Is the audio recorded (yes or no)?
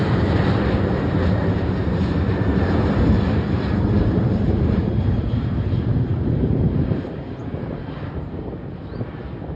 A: no